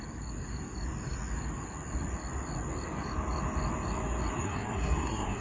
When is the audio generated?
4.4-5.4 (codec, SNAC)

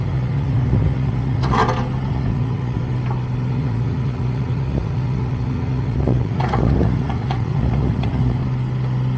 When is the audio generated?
0.0-1.6 (vocoder, Vocos); 2.1-2.8; 3.5-8.4

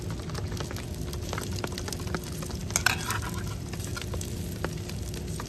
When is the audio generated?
none

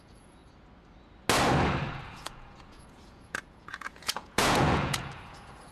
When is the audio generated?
0.0-0.4 (vocoder, Vocos); 1.9-5.7

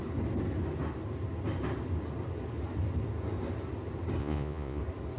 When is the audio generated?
4.2-4.8 (vocoder, Vocos)

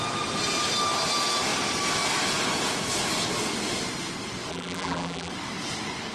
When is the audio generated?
4.5-5.3 (vocoder, BigVGAN v2)

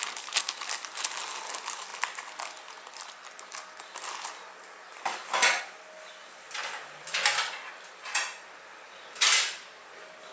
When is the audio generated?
none